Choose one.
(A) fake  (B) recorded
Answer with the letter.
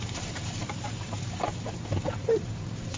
A